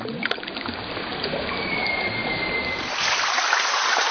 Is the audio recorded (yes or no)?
yes